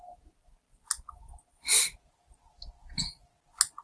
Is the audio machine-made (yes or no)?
no